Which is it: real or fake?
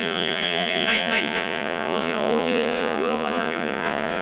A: fake